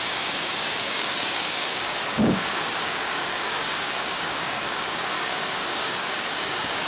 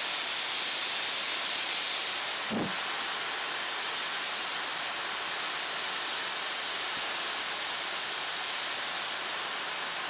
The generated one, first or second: first